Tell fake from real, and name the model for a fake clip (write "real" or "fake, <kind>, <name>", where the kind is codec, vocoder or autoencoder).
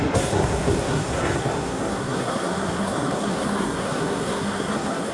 fake, codec, SNAC